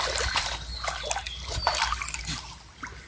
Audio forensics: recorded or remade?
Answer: recorded